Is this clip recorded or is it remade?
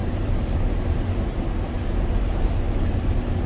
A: recorded